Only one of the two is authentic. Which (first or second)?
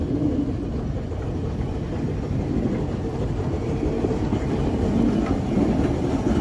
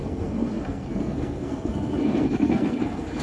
first